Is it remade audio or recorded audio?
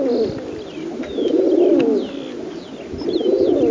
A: recorded